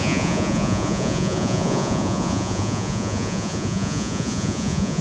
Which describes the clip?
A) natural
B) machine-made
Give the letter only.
B